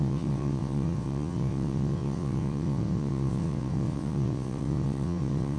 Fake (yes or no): yes